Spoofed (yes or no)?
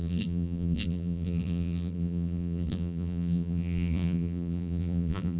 yes